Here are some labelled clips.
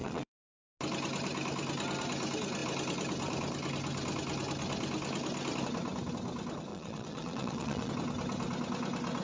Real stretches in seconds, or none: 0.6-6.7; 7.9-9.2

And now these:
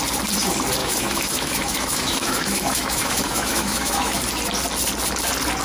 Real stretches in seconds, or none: 0.0-0.8; 4.2-5.6

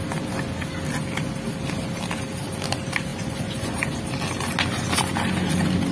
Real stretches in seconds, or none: 0.0-3.1; 4.0-5.9

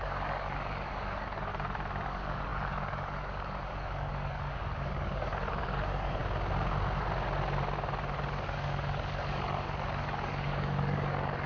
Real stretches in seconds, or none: 1.5-2.1; 6.2-8.2

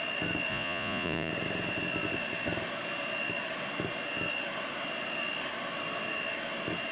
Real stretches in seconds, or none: 0.0-0.5; 1.3-6.9

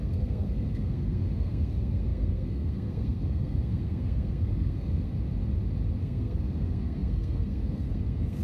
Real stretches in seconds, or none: 5.1-6.0

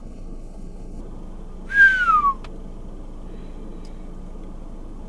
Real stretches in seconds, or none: 1.0-5.1

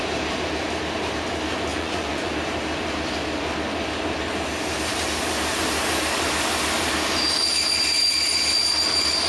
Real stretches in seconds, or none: 0.0-1.7; 2.3-9.3